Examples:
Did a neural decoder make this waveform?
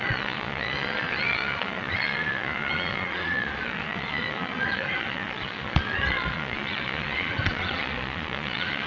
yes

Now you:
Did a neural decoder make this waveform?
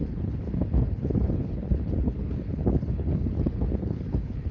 yes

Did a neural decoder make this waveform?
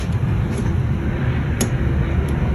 yes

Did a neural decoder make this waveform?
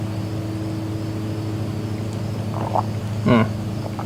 no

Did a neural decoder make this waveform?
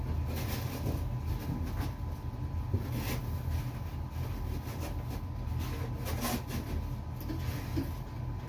no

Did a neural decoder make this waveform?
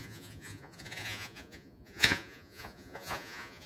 yes